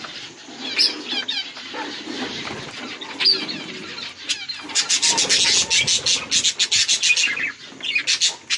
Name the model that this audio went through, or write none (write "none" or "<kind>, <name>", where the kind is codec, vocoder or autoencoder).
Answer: none